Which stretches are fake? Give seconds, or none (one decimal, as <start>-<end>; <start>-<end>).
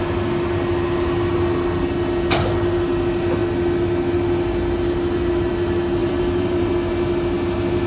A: 6.0-6.7